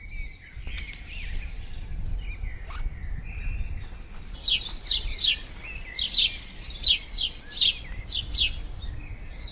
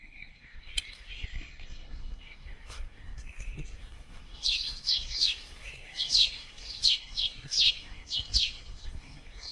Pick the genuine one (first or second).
first